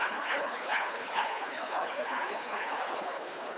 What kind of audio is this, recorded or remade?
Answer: remade